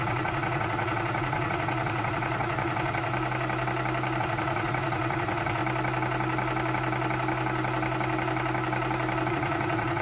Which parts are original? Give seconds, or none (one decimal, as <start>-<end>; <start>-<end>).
3.1-4.2; 5.6-9.3